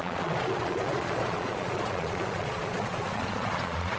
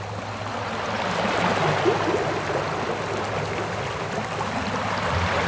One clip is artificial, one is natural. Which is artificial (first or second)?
first